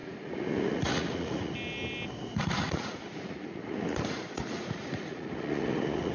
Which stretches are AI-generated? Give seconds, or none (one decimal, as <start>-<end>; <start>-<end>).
0.0-1.5; 2.3-6.1